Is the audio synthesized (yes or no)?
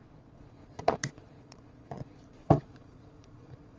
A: yes